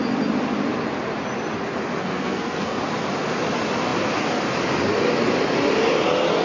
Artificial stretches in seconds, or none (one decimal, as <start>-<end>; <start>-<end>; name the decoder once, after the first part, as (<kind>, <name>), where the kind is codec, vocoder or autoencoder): 2.0-2.8 (codec, SNAC)